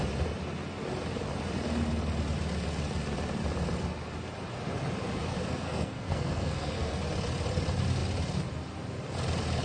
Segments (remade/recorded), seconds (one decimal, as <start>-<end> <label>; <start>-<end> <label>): 0.0-5.3 recorded; 5.3-7.0 remade; 7.0-9.6 recorded